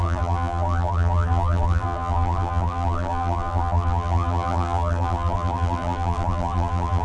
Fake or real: fake